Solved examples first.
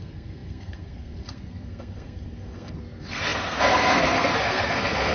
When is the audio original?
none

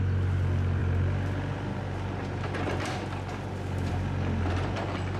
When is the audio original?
0.0-5.2

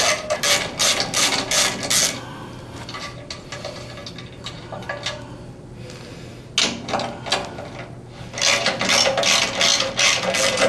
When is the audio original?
0.0-10.7

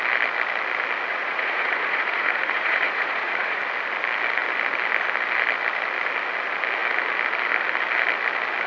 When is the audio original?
0.0-1.1; 3.6-8.7

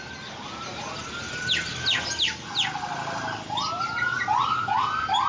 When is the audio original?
0.0-5.3

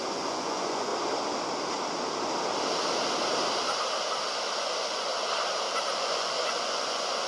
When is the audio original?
0.9-4.6; 5.1-5.9